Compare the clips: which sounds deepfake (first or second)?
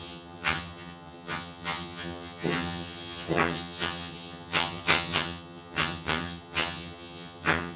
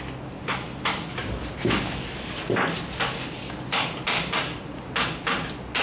first